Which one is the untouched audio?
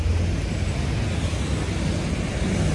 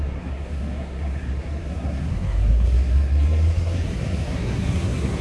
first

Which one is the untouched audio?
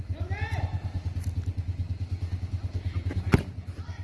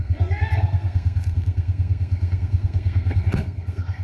first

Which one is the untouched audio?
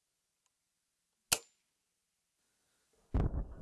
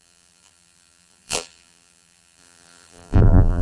first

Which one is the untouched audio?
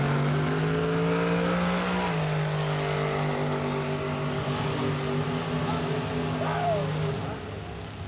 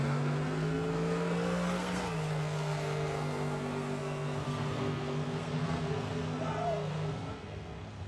first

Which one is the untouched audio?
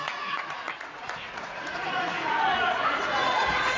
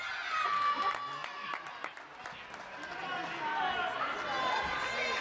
second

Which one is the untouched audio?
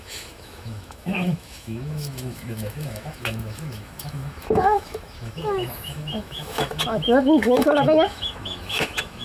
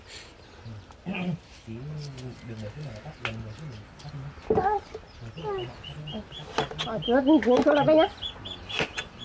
second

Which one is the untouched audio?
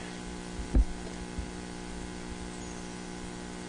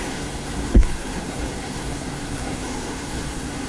first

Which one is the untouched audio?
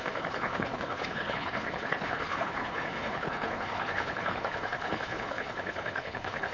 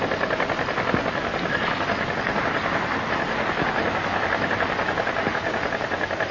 second